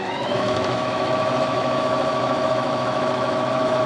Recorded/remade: remade